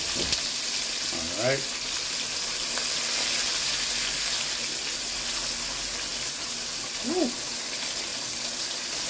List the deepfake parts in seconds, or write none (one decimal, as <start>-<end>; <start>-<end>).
none